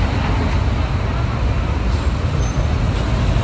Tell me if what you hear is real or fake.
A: real